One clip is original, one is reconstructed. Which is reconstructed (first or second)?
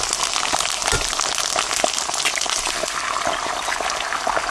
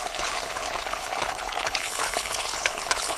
second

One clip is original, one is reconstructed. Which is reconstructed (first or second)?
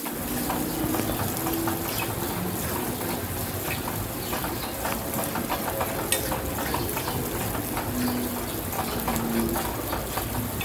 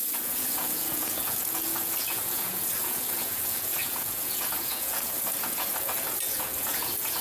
second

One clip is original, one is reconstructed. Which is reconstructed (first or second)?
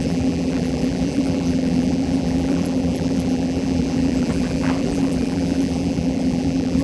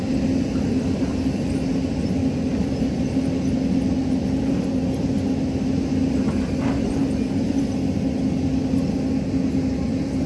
first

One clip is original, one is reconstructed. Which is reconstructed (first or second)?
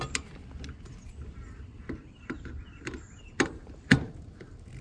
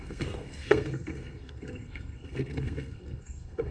second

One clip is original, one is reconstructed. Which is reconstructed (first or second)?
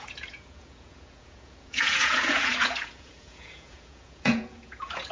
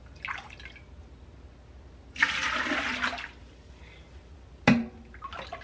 first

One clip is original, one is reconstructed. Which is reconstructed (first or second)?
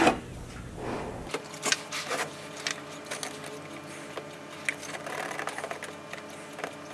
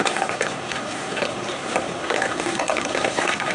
second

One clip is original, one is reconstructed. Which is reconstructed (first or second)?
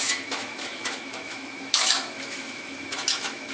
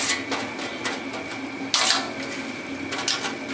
first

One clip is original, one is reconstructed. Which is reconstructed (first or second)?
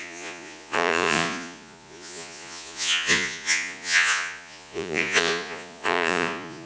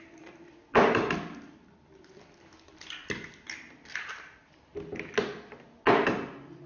first